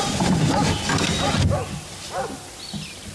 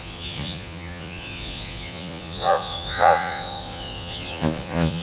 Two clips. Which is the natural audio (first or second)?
first